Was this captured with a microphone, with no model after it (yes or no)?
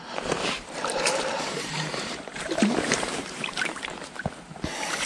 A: no